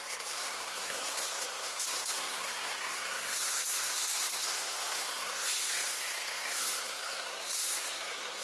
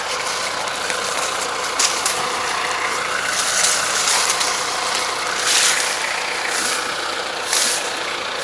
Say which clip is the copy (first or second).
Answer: first